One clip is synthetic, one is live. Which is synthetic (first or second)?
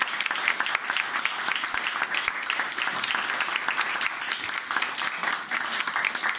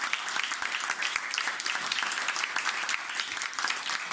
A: second